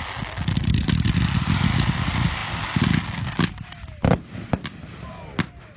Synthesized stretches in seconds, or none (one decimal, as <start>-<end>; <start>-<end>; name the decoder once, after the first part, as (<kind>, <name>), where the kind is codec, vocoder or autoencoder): none